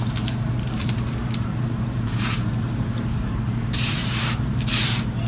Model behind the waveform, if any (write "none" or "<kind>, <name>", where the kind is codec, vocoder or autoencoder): vocoder, BigVGAN v2